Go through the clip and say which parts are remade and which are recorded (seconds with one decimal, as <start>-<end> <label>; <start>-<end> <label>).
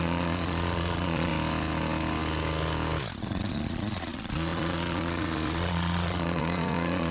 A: 0.0-1.3 remade; 1.3-3.2 recorded; 3.2-7.1 remade